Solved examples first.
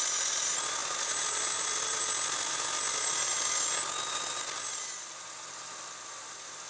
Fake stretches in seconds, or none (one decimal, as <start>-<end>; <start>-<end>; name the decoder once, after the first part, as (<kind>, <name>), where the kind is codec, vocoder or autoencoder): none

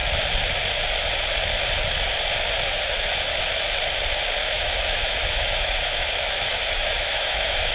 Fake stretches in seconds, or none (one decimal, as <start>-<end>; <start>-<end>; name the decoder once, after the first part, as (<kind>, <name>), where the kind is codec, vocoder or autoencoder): 4.4-7.7 (autoencoder, DAC-VAE)

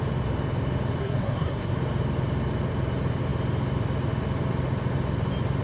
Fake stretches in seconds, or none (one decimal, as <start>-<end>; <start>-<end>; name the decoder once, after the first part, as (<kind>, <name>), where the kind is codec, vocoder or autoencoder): 1.0-1.7 (codec, SNAC)